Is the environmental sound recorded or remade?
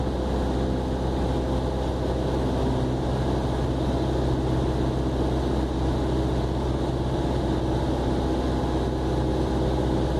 recorded